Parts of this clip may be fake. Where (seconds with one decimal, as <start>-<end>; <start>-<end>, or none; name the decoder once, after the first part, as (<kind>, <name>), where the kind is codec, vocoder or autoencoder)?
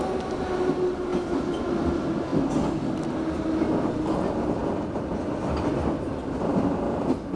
none